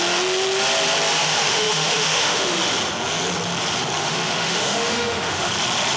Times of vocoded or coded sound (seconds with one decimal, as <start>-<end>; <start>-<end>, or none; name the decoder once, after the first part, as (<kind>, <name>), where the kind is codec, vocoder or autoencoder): 1.2-2.7 (autoencoder, DAC-VAE); 4.0-5.5